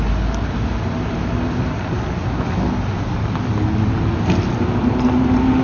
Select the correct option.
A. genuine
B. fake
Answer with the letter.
A